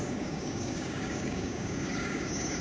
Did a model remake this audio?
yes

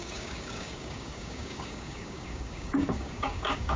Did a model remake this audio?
yes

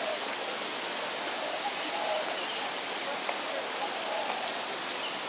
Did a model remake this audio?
no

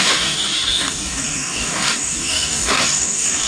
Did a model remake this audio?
yes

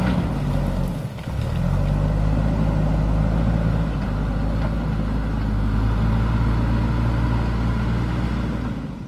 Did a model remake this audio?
no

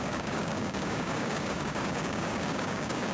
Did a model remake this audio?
yes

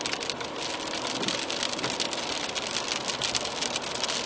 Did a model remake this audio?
no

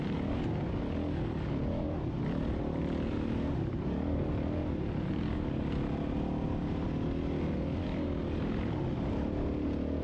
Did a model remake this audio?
no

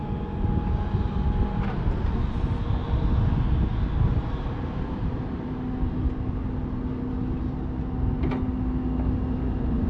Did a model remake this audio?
no